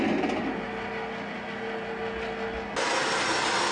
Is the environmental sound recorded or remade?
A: recorded